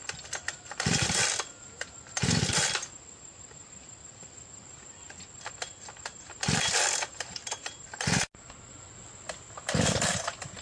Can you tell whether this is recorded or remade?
recorded